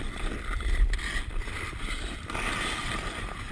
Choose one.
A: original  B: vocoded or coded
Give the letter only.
A